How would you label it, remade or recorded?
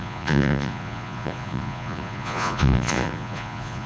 remade